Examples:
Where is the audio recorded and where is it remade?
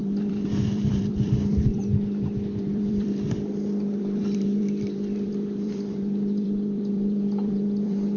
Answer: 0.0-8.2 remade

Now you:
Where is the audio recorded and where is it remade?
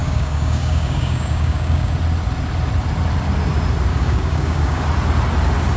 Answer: 0.0-1.9 remade; 1.9-3.9 recorded; 3.9-4.8 remade; 4.8-5.8 recorded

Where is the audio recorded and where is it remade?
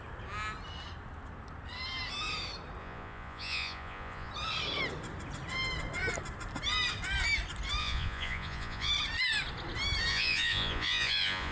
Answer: 0.0-2.8 recorded; 2.8-4.3 remade; 4.3-7.8 recorded; 7.8-8.9 remade; 8.9-10.1 recorded; 10.1-11.5 remade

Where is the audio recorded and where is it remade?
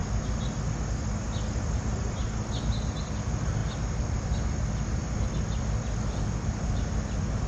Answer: 0.0-7.5 recorded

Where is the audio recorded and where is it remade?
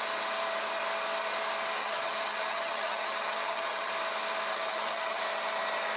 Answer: 0.0-1.8 recorded; 1.8-3.9 remade; 3.9-4.5 recorded; 4.5-5.2 remade; 5.2-6.0 recorded